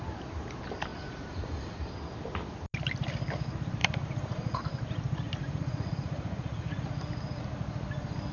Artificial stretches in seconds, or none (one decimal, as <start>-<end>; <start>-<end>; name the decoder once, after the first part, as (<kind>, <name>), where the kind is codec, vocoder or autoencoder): 0.9-1.9 (vocoder, Vocos); 3.8-4.6; 5.4-6.8